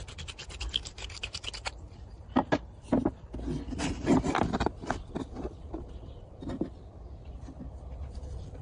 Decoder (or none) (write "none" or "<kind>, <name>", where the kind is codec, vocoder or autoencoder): none